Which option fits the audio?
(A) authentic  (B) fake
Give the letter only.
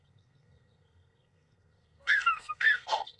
B